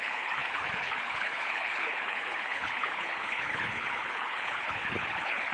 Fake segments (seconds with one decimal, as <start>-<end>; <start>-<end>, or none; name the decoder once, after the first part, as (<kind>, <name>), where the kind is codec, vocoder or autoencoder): 0.0-5.5 (codec, HILCodec)